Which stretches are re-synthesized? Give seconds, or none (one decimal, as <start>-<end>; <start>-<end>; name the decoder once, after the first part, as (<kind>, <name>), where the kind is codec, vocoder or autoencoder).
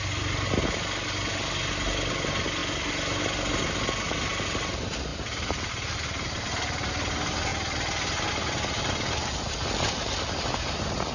none